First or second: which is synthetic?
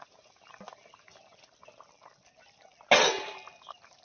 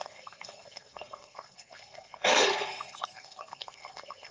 second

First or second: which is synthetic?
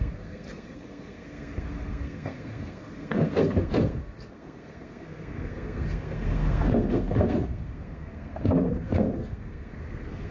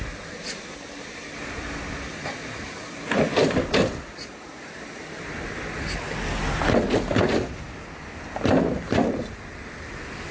first